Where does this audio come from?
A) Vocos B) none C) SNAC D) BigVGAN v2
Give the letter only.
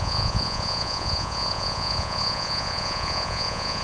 A